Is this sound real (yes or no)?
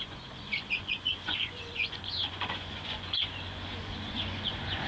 no